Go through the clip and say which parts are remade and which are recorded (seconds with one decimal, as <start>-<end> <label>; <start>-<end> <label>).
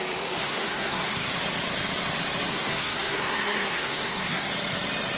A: 0.0-0.4 recorded; 0.4-1.3 remade; 1.3-2.5 recorded; 2.5-4.5 remade; 4.5-5.2 recorded